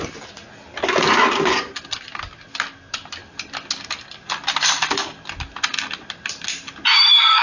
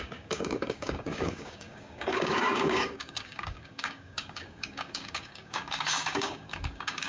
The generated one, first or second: second